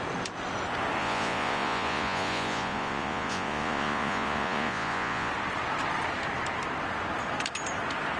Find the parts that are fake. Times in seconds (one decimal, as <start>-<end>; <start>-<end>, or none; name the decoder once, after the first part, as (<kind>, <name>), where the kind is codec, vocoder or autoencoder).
1.0-5.3 (vocoder, Vocos)